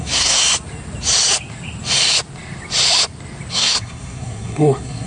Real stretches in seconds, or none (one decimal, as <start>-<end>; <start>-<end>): 0.4-3.5